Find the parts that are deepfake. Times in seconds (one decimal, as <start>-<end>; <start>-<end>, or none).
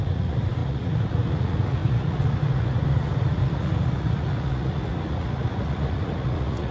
0.0-6.7